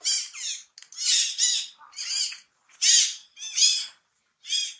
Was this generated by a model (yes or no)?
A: no